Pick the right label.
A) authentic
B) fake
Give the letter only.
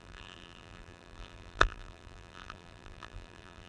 B